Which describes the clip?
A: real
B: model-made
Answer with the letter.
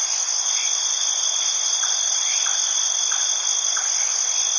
A